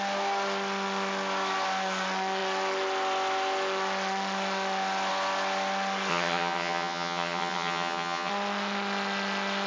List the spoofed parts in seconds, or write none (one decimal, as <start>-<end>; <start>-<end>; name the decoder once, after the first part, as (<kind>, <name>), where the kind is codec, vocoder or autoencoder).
6.1-8.3 (vocoder, HiFi-GAN)

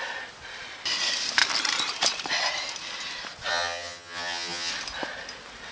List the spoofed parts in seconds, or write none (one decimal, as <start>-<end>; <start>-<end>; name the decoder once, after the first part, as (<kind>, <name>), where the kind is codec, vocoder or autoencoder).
3.5-4.7 (vocoder, HiFi-GAN)

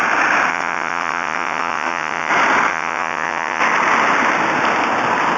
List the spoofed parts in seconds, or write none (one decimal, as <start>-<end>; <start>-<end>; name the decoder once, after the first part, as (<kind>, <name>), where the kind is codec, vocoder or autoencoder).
0.5-2.3 (vocoder, HiFi-GAN); 2.7-3.6

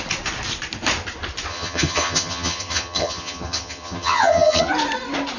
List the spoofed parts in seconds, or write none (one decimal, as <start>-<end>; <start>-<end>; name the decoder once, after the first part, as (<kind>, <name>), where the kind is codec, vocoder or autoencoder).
1.5-4.7 (vocoder, HiFi-GAN)

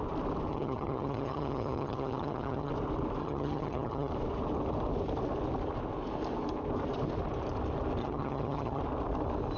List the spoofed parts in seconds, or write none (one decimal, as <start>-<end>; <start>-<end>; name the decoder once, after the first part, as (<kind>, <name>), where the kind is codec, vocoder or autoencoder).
0.5-2.7 (vocoder, HiFi-GAN); 3.2-4.1; 8.0-8.8

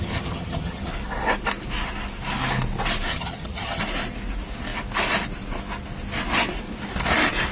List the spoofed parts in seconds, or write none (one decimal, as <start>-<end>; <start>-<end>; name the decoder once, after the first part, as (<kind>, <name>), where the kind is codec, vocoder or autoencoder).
0.0-0.9 (vocoder, HiFi-GAN); 3.1-3.8

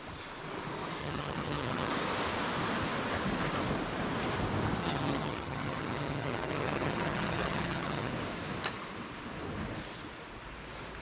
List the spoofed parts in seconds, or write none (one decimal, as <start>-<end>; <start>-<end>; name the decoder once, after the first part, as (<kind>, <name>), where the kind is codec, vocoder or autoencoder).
1.0-1.9 (vocoder, HiFi-GAN); 4.8-8.1

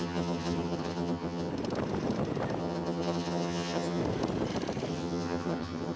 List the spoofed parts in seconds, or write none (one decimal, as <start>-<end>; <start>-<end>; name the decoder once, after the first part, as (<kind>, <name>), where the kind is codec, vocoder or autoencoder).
0.0-1.5 (vocoder, HiFi-GAN); 2.6-4.0; 4.9-6.0